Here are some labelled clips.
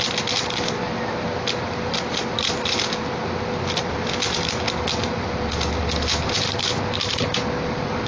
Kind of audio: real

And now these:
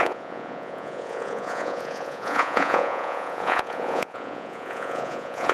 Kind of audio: fake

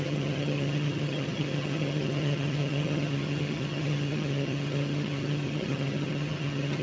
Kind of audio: fake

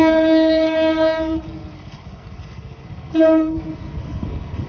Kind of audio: fake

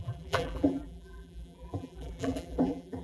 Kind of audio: fake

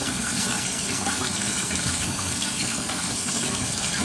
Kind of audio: fake